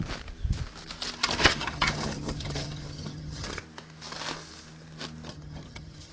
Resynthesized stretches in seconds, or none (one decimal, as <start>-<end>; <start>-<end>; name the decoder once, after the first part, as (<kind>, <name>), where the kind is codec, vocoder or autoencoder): 1.4-3.6 (vocoder, HiFi-GAN); 5.3-6.1